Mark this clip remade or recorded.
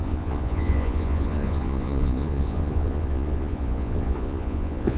remade